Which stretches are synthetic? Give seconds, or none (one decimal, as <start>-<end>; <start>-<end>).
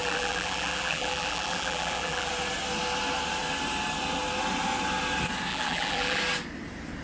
0.0-2.3; 5.5-6.2